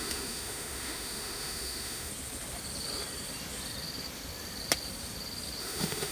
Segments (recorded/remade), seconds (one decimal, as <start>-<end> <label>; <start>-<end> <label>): 0.0-2.1 remade; 2.1-5.6 recorded; 5.6-6.1 remade